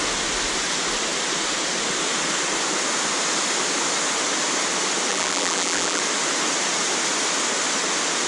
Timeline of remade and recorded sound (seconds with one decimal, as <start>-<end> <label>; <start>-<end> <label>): 0.0-5.1 recorded; 5.1-6.0 remade; 6.0-8.3 recorded